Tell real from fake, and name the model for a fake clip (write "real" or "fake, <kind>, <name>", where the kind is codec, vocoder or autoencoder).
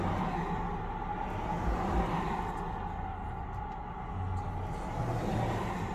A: real